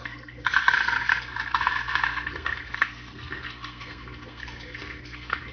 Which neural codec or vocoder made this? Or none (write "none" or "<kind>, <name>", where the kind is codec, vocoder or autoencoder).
codec, SNAC